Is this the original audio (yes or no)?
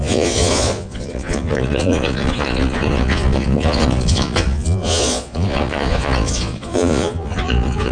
no